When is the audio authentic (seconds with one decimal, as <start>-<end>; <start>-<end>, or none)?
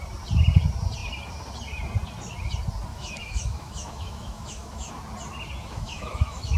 0.0-2.9; 4.9-5.6